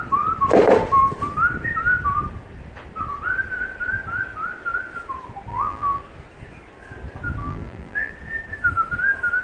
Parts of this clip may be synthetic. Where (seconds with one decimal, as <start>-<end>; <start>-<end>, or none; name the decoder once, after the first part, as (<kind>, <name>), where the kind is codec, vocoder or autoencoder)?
5.5-6.0 (vocoder, BigVGAN v2); 7.4-8.1